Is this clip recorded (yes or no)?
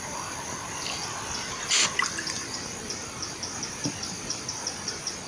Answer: yes